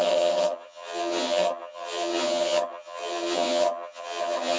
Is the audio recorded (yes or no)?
no